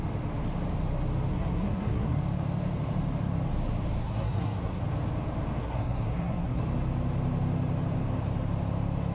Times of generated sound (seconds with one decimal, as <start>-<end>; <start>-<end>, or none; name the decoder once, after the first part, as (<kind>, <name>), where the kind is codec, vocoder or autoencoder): 1.3-2.2 (codec, SNAC); 4.0-4.8; 5.6-6.6